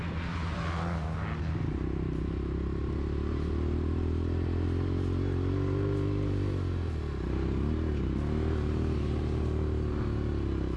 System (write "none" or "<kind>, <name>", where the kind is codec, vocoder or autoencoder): none